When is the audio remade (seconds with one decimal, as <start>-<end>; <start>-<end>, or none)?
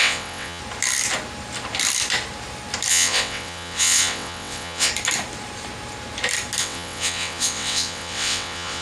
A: 0.0-0.6; 2.9-4.9; 6.6-8.8